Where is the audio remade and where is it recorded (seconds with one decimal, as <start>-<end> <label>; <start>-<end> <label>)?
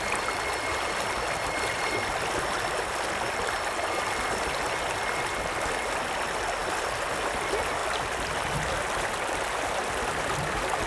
0.0-10.9 recorded